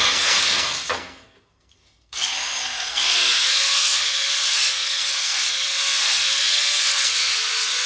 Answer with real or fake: fake